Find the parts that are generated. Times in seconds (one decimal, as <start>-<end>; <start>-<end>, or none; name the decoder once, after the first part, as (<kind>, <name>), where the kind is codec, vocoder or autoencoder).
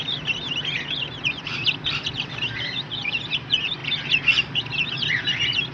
none